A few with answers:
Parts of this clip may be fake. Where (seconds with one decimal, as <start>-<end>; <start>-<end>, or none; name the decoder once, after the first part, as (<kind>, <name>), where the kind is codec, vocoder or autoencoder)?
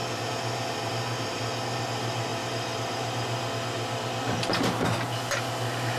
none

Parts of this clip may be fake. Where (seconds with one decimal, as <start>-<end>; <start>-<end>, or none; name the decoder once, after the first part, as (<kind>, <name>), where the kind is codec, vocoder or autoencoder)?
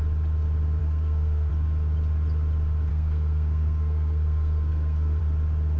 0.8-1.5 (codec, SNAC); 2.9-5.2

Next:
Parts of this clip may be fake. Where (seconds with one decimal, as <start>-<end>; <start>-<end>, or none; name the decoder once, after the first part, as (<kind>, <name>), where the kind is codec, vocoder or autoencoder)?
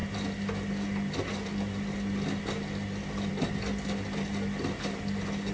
none